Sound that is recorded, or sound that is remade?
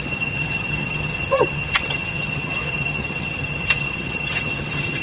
remade